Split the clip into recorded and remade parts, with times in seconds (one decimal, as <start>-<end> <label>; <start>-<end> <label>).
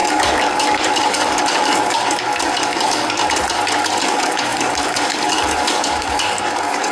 0.0-3.2 remade; 3.2-4.0 recorded; 4.0-6.9 remade